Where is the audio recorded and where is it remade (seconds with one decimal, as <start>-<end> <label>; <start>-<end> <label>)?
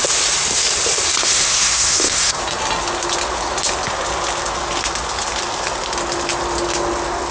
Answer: 0.0-1.2 recorded; 1.2-2.4 remade; 2.4-7.3 recorded